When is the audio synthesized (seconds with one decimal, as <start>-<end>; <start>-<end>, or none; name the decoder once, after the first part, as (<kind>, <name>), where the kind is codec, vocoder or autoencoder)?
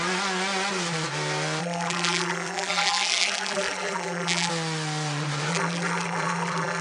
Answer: 1.6-4.5 (vocoder, BigVGAN v2); 5.5-6.8